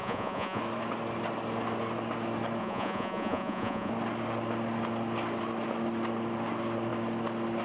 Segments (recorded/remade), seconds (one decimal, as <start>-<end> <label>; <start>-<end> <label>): 0.0-0.6 remade; 0.6-2.6 recorded; 2.6-3.9 remade; 3.9-7.6 recorded